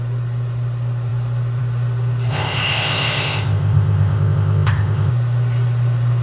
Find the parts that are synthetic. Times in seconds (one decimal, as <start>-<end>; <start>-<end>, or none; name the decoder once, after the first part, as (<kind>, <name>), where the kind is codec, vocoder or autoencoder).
2.3-5.1 (codec, ZipCodec)